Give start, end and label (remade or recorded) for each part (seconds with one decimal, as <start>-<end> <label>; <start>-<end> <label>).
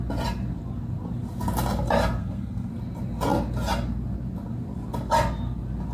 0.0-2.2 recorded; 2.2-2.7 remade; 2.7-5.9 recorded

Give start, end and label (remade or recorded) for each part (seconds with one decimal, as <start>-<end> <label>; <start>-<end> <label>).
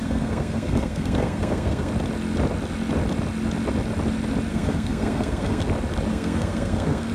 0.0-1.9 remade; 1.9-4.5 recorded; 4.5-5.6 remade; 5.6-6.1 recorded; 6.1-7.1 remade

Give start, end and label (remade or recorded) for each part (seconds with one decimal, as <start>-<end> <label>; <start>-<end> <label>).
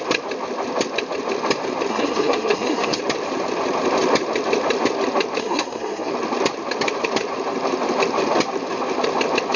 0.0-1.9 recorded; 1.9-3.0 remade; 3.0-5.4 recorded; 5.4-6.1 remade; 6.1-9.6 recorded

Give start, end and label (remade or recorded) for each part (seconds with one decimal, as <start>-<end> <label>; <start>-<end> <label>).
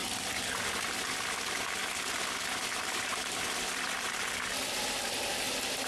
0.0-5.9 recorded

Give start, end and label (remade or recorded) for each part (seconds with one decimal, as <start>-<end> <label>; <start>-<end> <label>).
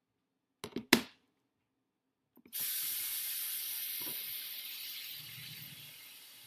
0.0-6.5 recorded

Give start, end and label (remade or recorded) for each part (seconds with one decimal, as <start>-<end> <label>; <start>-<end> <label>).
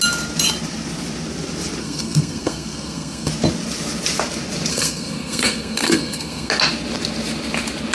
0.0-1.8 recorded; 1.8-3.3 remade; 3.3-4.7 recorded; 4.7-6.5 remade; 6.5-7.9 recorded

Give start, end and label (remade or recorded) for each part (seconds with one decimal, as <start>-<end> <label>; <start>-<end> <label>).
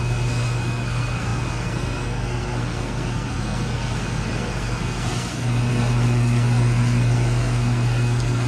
0.0-8.5 remade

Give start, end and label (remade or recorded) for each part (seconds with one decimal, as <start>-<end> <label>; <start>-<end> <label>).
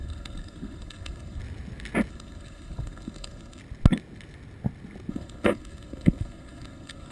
0.0-1.4 remade; 1.4-2.1 recorded; 2.1-3.6 remade; 3.6-5.1 recorded; 5.1-7.1 remade